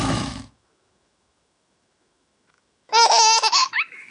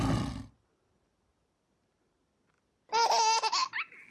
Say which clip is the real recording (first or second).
second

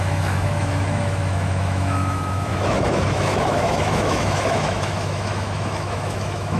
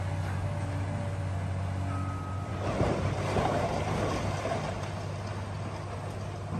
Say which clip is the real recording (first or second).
second